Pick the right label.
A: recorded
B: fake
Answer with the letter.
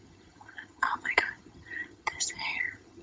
B